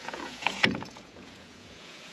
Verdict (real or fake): fake